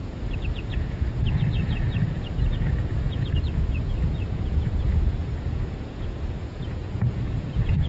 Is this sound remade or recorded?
remade